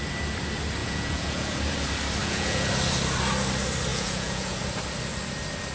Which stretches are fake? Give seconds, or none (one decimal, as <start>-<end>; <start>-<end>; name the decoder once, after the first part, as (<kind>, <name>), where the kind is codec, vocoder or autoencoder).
0.8-1.6 (vocoder, Vocos); 2.2-2.7; 3.9-4.6